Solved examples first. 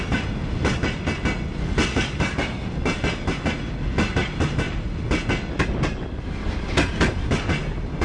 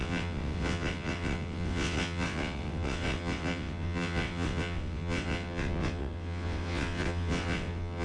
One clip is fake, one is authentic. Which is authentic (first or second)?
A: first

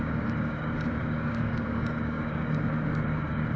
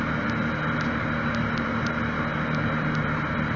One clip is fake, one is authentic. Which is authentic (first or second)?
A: second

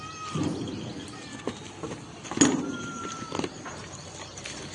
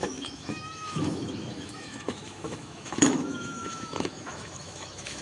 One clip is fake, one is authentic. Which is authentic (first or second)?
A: first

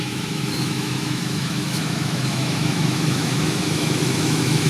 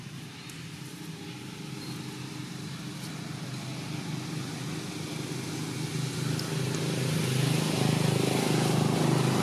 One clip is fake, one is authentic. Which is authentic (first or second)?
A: second